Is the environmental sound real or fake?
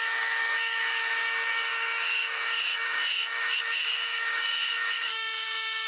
fake